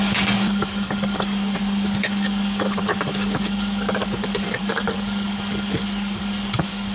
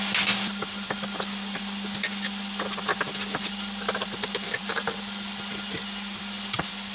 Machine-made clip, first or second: first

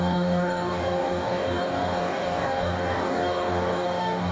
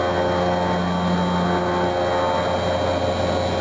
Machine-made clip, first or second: first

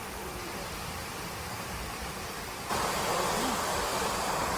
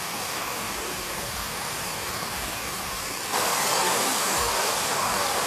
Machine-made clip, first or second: second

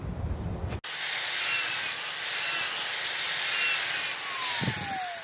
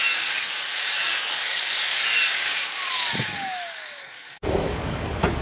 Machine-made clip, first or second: second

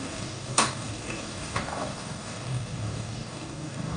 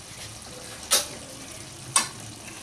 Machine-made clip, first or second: first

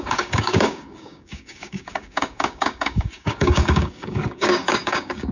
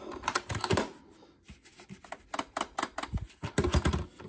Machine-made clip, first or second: first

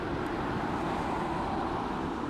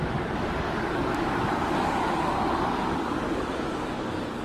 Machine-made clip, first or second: second